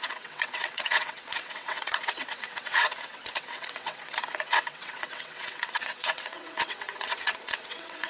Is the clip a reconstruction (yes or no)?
yes